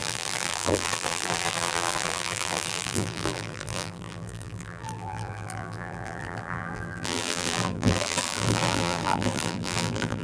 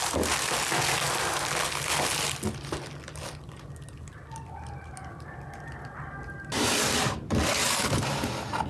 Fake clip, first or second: first